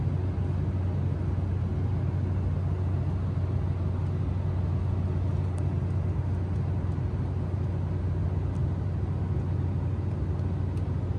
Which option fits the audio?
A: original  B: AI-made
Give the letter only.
A